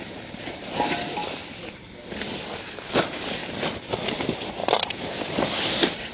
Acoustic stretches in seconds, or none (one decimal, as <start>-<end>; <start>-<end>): 1.4-2.9; 3.4-4.0; 4.6-5.3